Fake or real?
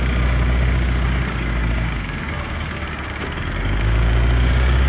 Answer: fake